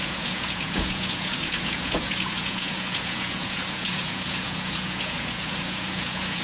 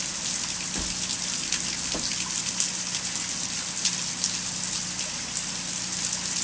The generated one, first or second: first